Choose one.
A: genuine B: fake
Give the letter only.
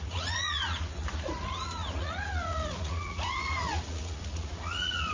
B